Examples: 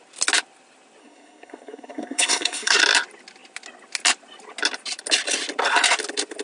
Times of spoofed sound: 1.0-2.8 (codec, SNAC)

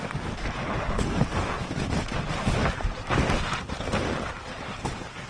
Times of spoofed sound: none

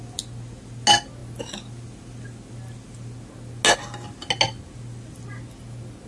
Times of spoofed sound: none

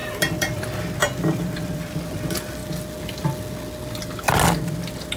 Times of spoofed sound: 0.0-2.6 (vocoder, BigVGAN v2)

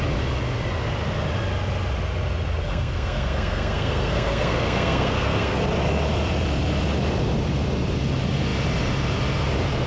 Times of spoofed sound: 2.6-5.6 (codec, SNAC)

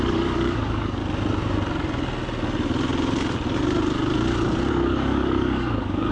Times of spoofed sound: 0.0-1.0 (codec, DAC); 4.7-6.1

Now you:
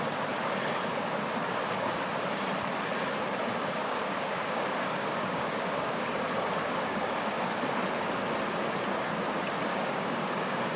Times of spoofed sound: 3.8-6.1 (codec, DAC); 6.6-7.5; 9.7-10.8

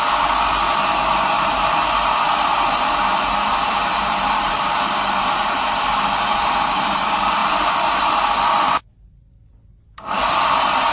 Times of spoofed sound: 2.5-5.8 (vocoder, BigVGAN v2); 6.3-7.0; 7.4-8.3